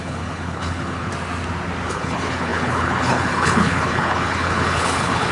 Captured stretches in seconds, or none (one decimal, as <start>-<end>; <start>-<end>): 1.1-1.9

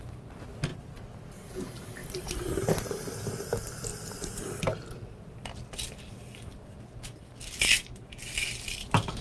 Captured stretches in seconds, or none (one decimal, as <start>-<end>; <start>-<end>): 0.0-0.7; 1.5-2.0; 2.6-3.9

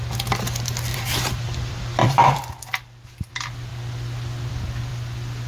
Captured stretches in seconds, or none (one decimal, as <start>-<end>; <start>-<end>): 0.0-0.9; 3.3-5.5